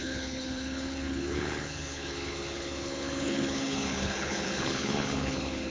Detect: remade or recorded remade